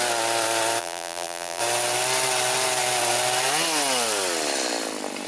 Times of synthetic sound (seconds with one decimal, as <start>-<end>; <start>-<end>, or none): 0.8-1.6